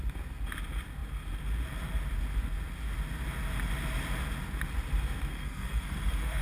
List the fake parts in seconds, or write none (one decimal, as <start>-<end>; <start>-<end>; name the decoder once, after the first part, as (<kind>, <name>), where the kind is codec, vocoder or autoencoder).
5.3-6.4 (codec, SNAC)